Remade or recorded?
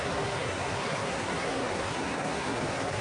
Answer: remade